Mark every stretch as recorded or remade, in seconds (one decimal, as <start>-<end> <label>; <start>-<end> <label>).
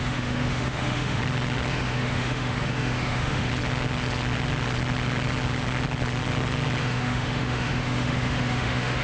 0.0-1.2 remade; 1.2-1.7 recorded; 1.7-3.5 remade; 3.5-6.8 recorded; 6.8-9.0 remade